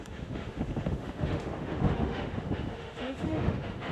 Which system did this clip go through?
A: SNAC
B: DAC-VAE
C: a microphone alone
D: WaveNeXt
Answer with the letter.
B